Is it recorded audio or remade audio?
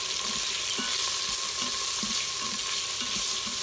recorded